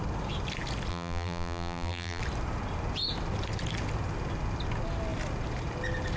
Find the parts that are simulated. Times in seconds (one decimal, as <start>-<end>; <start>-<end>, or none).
0.9-2.2